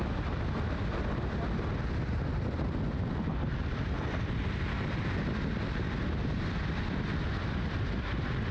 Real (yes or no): yes